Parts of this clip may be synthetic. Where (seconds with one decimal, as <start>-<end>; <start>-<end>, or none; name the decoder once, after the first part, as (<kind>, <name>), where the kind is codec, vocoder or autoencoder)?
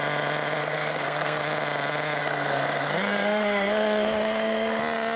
0.6-1.4 (codec, SNAC); 2.2-4.8